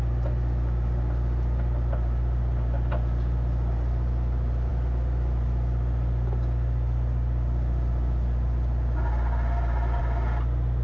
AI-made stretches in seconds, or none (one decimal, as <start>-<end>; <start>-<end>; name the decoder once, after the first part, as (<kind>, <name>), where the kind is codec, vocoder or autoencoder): none